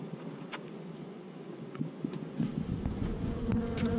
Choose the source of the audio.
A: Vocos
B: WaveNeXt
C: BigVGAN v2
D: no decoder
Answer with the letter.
A